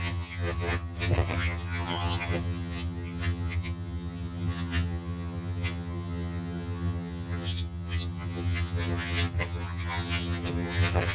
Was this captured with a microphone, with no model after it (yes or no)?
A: no